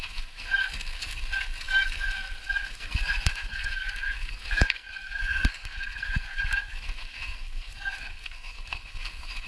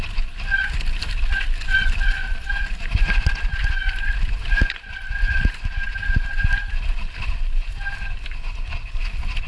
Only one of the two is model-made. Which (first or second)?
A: first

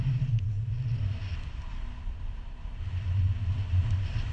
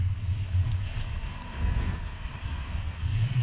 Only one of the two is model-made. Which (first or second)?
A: second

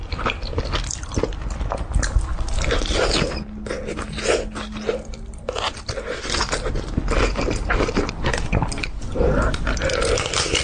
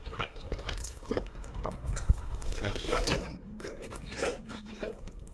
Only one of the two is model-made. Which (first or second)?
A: second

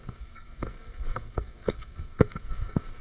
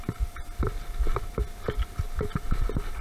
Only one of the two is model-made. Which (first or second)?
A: first